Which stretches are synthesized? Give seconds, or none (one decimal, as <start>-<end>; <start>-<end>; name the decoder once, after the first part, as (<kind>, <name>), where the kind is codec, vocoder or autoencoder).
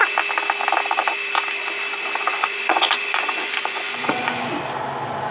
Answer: 2.3-4.5 (vocoder, Vocos)